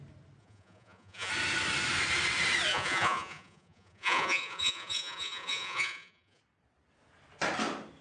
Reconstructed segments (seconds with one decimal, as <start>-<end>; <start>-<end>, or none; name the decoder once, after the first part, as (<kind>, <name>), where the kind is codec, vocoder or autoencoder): 0.4-1.3 (vocoder, Vocos); 2.7-6.4